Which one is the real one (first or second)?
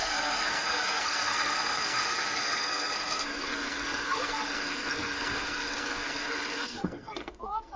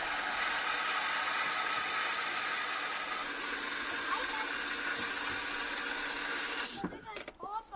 second